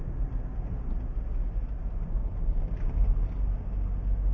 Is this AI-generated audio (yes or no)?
no